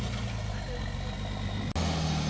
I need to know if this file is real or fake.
real